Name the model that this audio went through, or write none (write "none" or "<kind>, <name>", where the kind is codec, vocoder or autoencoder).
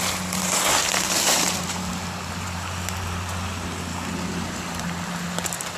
vocoder, BigVGAN v2